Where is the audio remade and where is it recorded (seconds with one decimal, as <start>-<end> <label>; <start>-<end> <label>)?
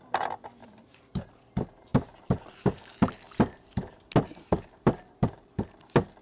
0.0-0.6 recorded; 0.6-1.3 remade; 1.3-1.9 recorded; 1.9-5.6 remade; 5.6-6.2 recorded